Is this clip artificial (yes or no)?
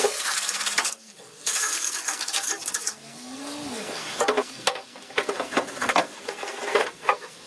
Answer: yes